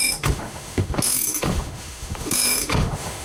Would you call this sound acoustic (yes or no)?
no